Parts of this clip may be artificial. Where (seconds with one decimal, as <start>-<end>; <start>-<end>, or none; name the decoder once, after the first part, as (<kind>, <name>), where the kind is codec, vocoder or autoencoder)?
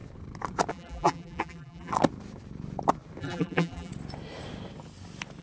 0.7-1.9 (vocoder, BigVGAN v2); 3.2-3.9